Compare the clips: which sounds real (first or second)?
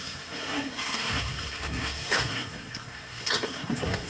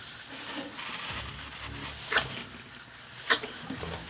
second